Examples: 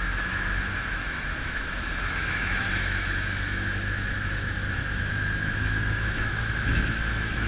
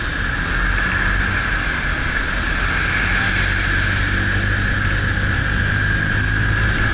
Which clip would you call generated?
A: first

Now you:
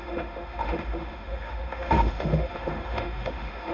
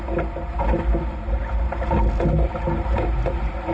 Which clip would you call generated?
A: first